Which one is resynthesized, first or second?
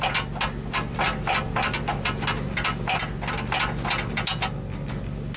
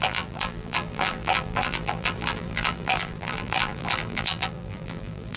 second